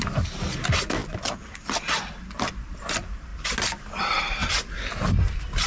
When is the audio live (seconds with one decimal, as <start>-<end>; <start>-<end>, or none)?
1.0-2.6; 3.3-4.0